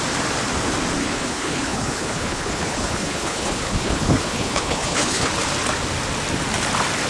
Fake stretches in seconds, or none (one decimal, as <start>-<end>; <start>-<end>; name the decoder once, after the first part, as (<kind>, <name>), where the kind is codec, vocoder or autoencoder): 1.0-5.3 (codec, HILCodec)